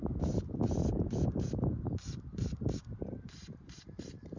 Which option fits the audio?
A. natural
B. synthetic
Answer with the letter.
B